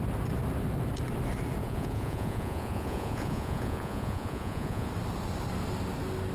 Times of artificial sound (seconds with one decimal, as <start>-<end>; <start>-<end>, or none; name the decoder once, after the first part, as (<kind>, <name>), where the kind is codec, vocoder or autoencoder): 1.6-4.9 (vocoder, Vocos)